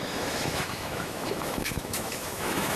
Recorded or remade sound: remade